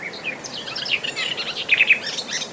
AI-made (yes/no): no